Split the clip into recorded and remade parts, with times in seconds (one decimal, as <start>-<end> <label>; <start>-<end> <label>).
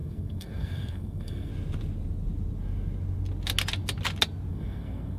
0.0-1.5 remade; 1.5-4.5 recorded; 4.5-5.2 remade